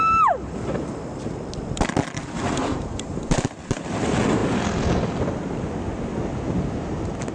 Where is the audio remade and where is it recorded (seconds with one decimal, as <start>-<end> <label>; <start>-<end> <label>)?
0.0-7.3 recorded